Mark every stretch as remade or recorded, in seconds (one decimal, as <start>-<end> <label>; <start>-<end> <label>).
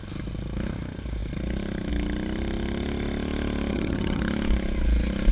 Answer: 0.0-3.7 recorded; 3.7-4.2 remade; 4.2-5.3 recorded